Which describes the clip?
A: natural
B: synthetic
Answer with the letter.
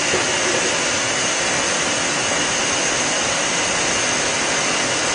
A